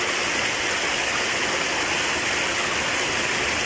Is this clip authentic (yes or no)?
yes